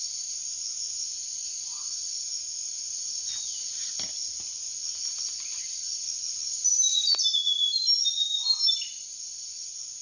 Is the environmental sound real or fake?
real